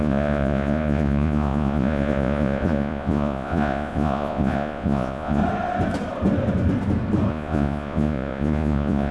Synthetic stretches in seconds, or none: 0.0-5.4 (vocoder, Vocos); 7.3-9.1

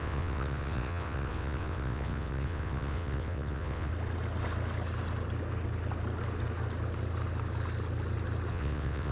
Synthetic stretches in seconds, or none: 0.0-3.9 (vocoder, WaveNeXt); 8.5-9.1

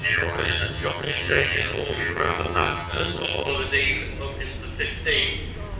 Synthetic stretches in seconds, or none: 0.0-3.5 (vocoder, HiFi-GAN)

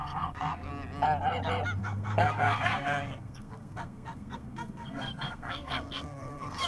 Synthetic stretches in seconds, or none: 0.0-0.7 (codec, SNAC); 1.8-6.7

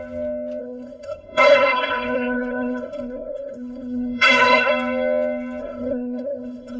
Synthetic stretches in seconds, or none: 0.6-4.7 (codec, SNAC); 5.6-6.8

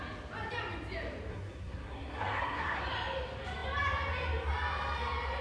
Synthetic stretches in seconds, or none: 1.3-2.8 (codec, SNAC)

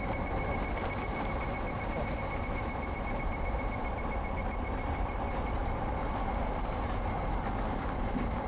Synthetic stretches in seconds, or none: none

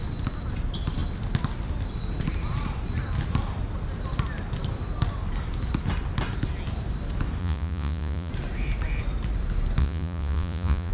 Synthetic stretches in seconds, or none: 7.4-8.3 (vocoder, Vocos); 9.8-10.9